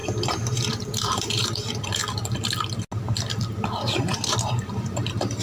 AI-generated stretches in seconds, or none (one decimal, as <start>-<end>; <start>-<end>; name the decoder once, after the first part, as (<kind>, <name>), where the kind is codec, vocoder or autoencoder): 0.0-2.0 (vocoder, BigVGAN v2); 4.0-5.4